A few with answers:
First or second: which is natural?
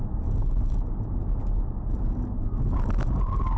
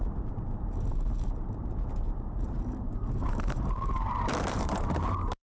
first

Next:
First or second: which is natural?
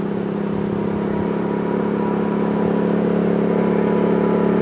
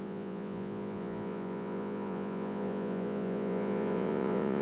first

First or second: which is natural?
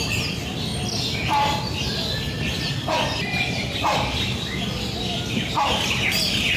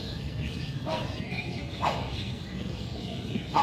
first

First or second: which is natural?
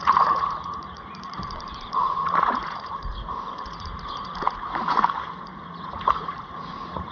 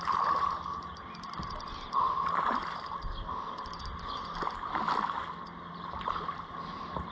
second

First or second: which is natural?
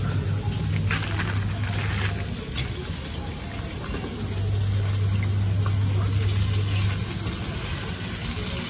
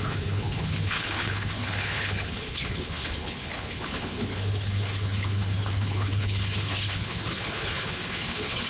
first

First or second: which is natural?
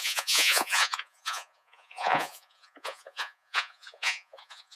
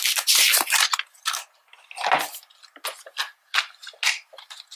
second